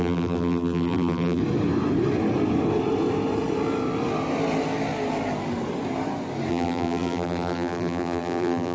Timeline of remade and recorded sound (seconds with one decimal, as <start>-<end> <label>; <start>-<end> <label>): 0.0-1.4 remade; 1.4-6.5 recorded; 6.5-8.7 remade